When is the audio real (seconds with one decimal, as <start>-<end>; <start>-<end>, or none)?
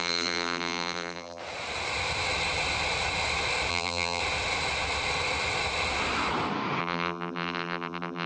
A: 1.4-3.7; 4.2-6.8